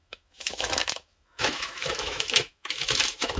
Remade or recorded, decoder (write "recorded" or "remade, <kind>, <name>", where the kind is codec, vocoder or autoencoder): remade, autoencoder, DAC-VAE